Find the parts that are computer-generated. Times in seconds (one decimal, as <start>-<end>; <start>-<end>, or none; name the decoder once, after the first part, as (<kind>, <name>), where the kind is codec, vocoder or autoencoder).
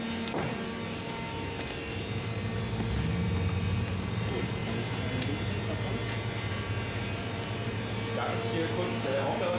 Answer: none